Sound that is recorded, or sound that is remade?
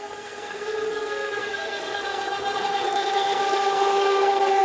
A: remade